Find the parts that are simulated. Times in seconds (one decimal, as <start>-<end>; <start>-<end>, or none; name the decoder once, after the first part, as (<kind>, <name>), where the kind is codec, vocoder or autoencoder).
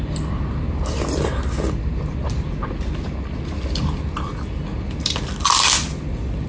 none